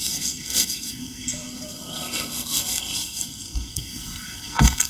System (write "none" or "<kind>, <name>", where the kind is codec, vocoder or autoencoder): codec, SNAC